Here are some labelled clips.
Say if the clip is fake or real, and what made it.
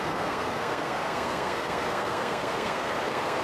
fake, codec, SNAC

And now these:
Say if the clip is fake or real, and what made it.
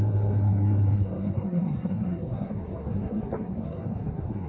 fake, codec, SNAC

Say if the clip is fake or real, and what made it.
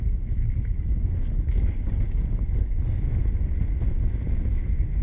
real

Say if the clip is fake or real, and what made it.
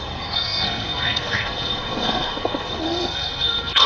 fake, codec, SNAC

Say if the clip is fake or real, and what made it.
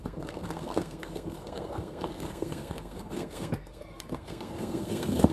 fake, codec, SNAC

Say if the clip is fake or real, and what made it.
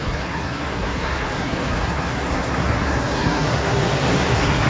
fake, codec, SNAC